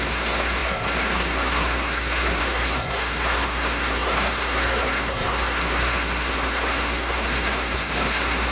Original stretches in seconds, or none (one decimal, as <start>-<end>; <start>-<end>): none